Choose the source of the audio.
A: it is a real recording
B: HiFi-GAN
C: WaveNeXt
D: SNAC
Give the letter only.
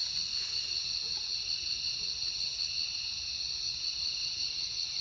A